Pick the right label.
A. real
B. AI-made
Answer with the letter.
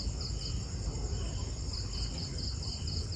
A